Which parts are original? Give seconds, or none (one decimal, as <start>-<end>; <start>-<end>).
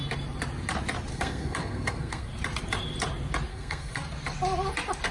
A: 0.0-1.1; 2.3-3.5; 4.0-5.1